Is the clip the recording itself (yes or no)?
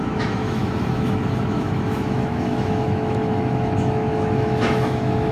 no